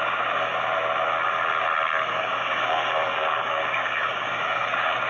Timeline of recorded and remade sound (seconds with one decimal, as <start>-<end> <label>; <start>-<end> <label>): 0.0-0.5 remade; 0.5-2.1 recorded; 2.1-5.1 remade